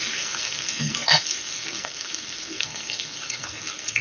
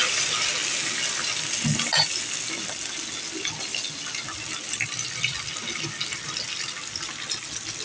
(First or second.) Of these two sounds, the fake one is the first